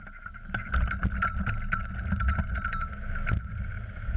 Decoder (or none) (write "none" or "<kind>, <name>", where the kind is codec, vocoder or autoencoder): none